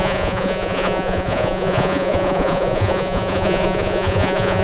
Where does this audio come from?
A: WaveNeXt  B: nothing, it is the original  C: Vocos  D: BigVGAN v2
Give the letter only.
C